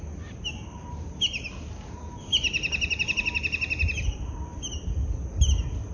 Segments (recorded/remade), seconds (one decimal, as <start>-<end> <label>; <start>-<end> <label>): 0.0-5.9 recorded